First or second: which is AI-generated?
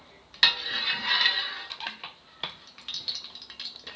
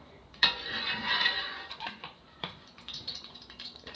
second